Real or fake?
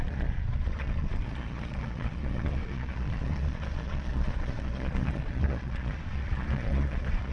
fake